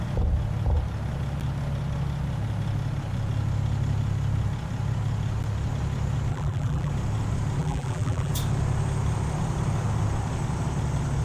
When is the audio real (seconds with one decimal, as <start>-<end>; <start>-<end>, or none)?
0.0-6.3; 6.9-7.6; 8.3-11.2